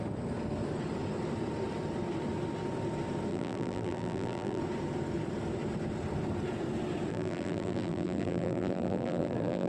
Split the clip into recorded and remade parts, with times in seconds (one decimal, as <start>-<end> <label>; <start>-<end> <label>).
0.0-3.3 recorded; 3.3-4.6 remade; 4.6-7.1 recorded; 7.1-9.7 remade